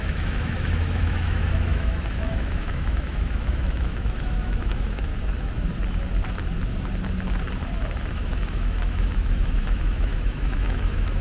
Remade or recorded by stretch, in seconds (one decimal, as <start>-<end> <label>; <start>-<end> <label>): 0.0-5.1 remade; 5.1-8.1 recorded; 8.1-11.2 remade

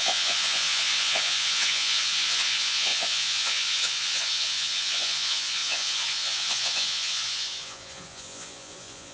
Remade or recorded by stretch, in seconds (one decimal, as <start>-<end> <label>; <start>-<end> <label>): 0.0-9.1 remade

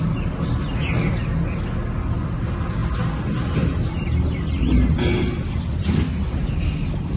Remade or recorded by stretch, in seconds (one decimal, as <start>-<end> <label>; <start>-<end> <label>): 0.0-7.2 recorded

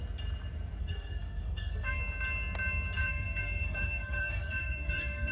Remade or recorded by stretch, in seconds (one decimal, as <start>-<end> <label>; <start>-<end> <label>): 0.0-0.8 recorded; 0.8-2.0 remade; 2.0-3.0 recorded; 3.0-5.3 remade

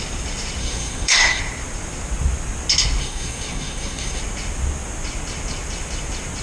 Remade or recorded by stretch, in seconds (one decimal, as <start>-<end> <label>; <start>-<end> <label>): 0.0-0.6 recorded; 0.6-1.4 remade; 1.4-3.0 recorded; 3.0-4.2 remade; 4.2-6.4 recorded

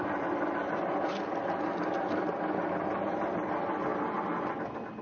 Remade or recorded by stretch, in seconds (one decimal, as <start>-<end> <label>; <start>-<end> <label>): 0.0-5.0 recorded